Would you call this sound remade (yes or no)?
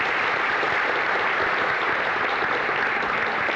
yes